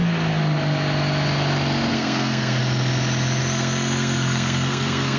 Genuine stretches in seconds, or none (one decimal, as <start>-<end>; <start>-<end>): 0.0-1.9; 2.6-3.4